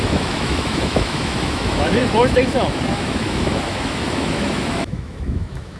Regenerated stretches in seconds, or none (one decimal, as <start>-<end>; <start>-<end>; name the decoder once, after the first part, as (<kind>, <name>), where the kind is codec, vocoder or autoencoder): 0.0-5.8 (autoencoder, DAC-VAE)